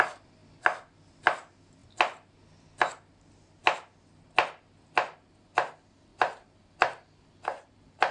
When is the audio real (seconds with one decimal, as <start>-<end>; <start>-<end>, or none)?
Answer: 0.0-6.1